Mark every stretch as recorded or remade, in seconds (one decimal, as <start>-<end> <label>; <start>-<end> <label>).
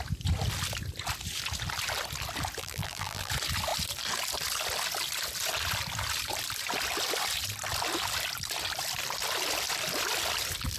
0.0-2.6 recorded; 2.6-3.3 remade; 3.3-10.8 recorded